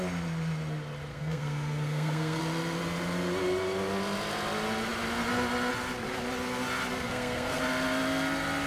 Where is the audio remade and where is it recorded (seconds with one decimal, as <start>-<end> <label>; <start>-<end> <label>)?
0.0-1.1 recorded; 1.1-2.4 remade; 2.4-6.9 recorded; 6.9-7.6 remade; 7.6-8.7 recorded